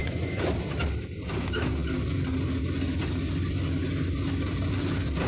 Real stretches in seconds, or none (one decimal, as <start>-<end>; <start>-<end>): 0.5-5.3